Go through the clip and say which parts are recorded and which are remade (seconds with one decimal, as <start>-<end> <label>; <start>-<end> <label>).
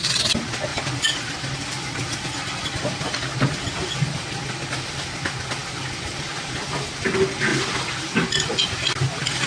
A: 0.0-0.7 recorded; 0.7-3.6 remade; 3.6-5.6 recorded; 5.6-6.3 remade; 6.3-7.5 recorded; 7.5-9.5 remade